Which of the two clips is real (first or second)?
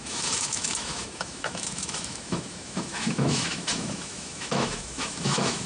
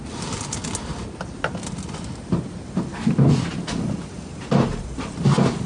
second